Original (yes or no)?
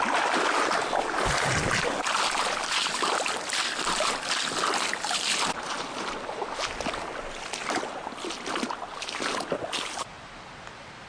yes